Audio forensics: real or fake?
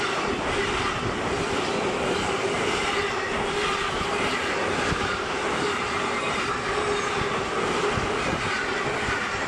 real